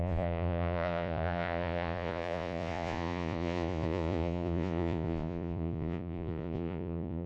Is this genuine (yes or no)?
no